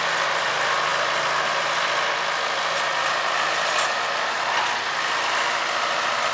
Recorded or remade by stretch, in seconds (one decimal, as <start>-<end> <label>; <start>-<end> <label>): 0.0-6.3 recorded